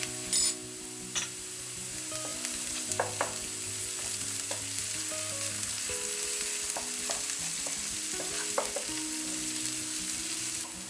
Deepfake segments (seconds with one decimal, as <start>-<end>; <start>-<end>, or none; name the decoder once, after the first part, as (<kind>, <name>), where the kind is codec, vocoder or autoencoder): none